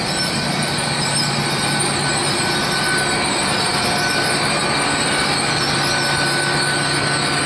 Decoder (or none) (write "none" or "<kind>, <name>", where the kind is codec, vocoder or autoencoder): none